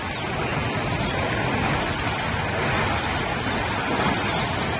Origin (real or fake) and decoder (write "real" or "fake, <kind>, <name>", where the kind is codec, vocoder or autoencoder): real